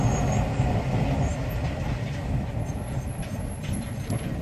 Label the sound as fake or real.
real